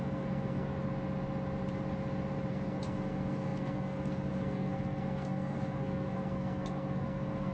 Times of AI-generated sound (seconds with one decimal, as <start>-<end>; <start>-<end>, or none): 0.0-0.7; 2.5-7.5